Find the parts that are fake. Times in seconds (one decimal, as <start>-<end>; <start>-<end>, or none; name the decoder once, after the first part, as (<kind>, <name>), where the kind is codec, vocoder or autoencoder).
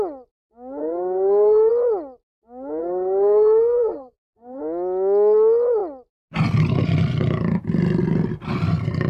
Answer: 0.8-1.7 (codec, SNAC); 2.8-4.6